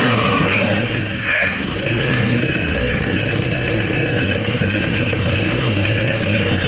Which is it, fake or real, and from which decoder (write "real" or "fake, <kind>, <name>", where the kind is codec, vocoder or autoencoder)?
fake, codec, SNAC